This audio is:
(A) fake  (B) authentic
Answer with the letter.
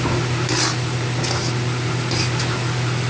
B